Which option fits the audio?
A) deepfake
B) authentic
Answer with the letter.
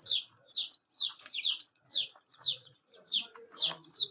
A